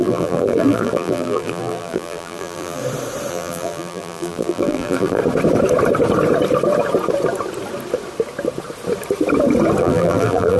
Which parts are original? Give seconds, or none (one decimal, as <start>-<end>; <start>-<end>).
2.8-3.3; 5.2-9.8